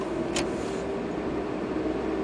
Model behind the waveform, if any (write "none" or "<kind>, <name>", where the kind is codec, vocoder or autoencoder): none